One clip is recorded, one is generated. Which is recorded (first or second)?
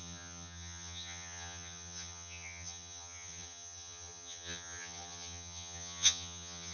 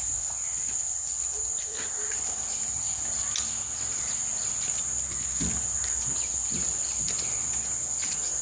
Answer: second